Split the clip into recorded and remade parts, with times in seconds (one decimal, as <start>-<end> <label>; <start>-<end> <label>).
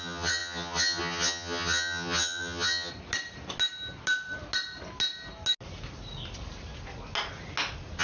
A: 0.0-2.9 remade; 2.9-8.0 recorded